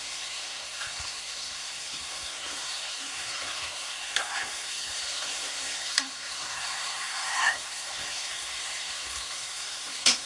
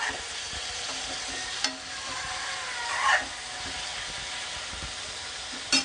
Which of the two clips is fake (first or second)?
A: first